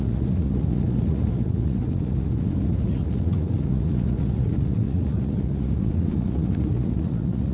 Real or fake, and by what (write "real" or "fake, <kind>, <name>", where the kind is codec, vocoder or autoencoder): fake, vocoder, Vocos